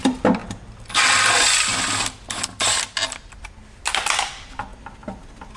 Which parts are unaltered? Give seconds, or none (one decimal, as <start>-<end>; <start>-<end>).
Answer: 0.0-5.6